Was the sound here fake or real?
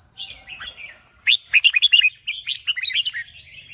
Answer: real